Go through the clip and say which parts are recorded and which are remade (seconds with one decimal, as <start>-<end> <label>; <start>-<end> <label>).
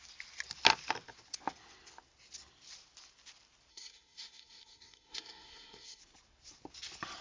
0.0-3.7 recorded; 3.7-6.0 remade; 6.0-7.2 recorded